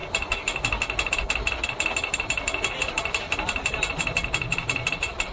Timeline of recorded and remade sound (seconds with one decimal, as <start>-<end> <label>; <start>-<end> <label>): 0.0-5.3 recorded